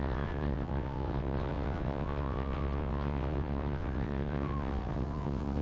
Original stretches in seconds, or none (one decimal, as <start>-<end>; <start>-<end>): none